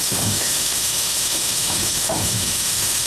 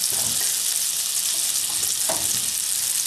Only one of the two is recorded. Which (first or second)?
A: second